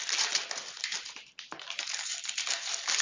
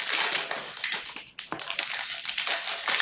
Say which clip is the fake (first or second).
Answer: first